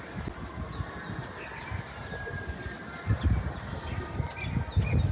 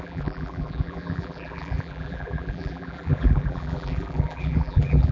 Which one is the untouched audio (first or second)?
first